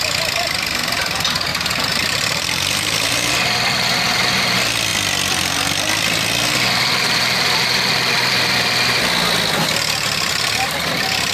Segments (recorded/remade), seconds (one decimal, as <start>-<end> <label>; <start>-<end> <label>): 0.0-1.5 recorded; 1.5-3.3 remade; 3.3-11.3 recorded